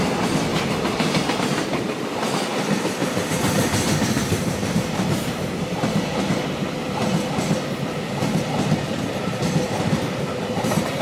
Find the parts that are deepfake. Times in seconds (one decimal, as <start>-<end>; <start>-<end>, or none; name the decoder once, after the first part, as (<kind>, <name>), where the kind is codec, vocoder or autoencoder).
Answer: 0.5-1.3 (vocoder, BigVGAN v2); 3.0-6.2